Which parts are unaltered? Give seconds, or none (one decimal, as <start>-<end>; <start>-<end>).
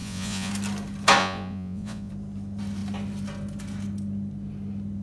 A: 0.5-1.2; 2.1-5.0